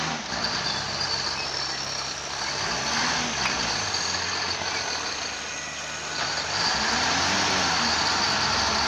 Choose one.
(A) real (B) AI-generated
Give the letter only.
A